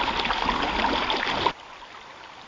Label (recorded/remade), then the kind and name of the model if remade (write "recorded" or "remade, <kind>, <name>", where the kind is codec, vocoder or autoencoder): recorded